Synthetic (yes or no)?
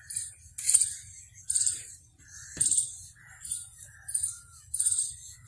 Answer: yes